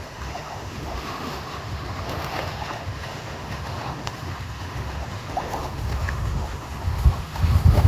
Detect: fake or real fake